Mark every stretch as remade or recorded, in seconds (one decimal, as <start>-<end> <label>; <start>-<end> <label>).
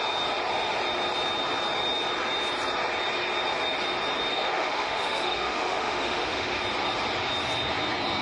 0.0-4.3 recorded; 4.3-6.6 remade; 6.6-8.2 recorded